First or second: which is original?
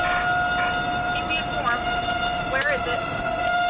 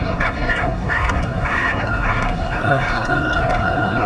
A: first